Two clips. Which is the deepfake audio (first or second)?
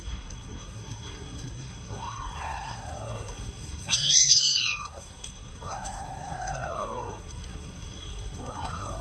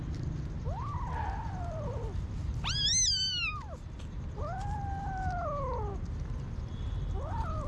first